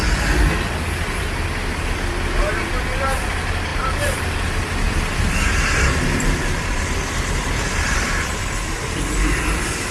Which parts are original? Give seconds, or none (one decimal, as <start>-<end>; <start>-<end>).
0.0-3.7; 4.4-5.5; 9.4-9.9

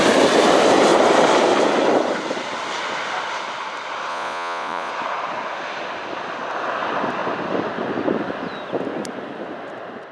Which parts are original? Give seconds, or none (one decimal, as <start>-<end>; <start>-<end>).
0.0-4.1; 4.9-10.1

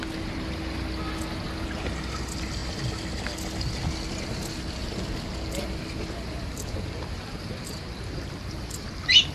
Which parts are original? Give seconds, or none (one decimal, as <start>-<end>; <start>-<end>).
0.0-9.3

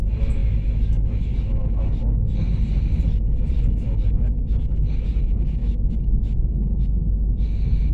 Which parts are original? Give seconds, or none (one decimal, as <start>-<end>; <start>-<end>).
0.0-5.6; 6.4-7.9

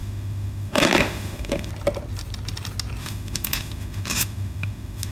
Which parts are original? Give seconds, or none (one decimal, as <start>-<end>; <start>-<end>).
1.7-3.0